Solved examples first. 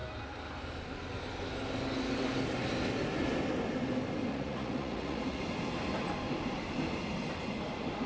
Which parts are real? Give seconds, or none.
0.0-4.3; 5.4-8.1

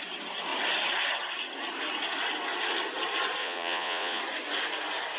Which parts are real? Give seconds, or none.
0.0-3.4; 4.2-5.2